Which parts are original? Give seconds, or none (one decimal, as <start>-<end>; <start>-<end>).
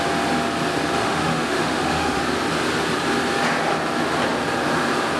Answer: 0.0-1.0; 2.2-5.2